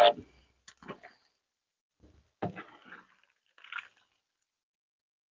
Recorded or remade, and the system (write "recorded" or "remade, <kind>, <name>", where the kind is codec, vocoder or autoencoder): recorded